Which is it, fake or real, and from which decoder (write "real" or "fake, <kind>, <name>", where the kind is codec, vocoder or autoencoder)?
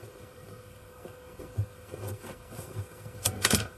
fake, codec, SNAC